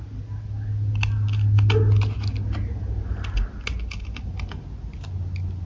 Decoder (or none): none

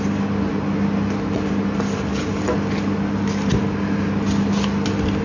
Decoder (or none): none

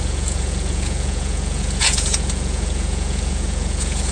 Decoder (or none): vocoder, Vocos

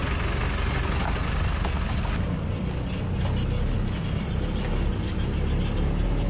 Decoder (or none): none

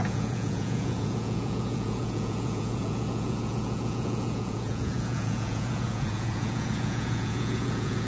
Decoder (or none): vocoder, Vocos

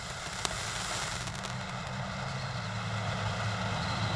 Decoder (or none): none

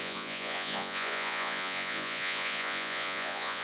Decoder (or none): vocoder, Vocos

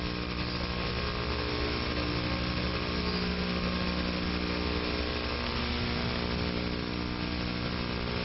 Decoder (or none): none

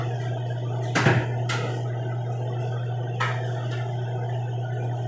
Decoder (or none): none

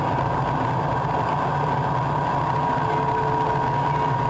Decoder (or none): none